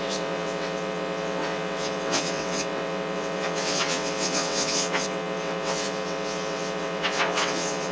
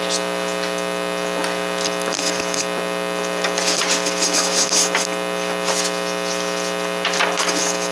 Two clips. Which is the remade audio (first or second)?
first